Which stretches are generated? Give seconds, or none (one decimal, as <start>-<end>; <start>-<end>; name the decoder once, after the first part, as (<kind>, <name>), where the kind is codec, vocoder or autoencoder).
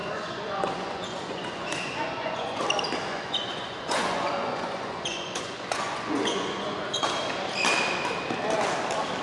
0.0-2.6 (vocoder, Vocos); 3.1-6.9